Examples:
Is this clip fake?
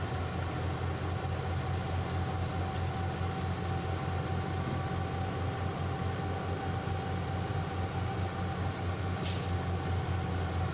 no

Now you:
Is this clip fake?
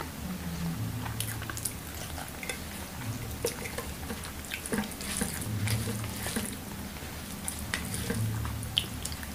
no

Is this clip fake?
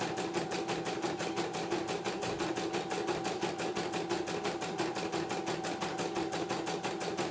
no